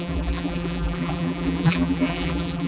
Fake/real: fake